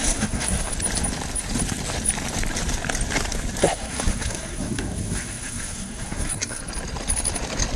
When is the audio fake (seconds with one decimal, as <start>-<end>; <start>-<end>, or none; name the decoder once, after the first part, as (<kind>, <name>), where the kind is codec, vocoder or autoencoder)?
0.0-0.7 (codec, SNAC); 3.6-6.6